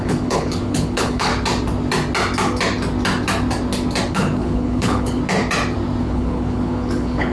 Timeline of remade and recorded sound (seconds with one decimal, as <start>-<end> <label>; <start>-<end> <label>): 0.0-1.3 remade; 1.3-4.1 recorded; 4.1-5.2 remade; 5.2-6.0 recorded; 6.0-7.3 remade